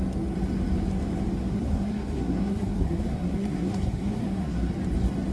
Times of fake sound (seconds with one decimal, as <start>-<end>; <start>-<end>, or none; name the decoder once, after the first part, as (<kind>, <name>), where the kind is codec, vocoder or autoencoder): 1.5-4.7 (codec, SNAC)